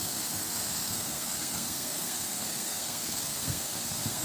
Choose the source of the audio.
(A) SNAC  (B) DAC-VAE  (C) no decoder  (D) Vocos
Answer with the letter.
A